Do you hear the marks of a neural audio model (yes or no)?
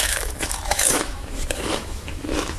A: yes